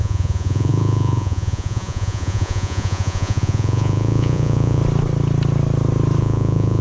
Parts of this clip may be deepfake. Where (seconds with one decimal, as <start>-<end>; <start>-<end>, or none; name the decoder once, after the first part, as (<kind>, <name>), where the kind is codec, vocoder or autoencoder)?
0.0-4.8 (vocoder, Vocos); 6.2-6.8